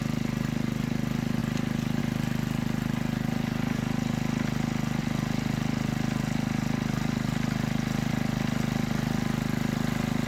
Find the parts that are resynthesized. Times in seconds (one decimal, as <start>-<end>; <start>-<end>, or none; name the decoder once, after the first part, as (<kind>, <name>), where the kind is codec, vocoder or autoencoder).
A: none

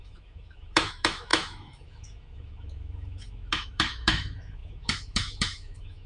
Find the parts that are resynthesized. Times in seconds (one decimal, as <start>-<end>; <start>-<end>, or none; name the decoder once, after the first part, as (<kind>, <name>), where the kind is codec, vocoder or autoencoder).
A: 0.0-6.1 (autoencoder, DAC-VAE)